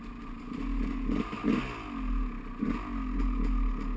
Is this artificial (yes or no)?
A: no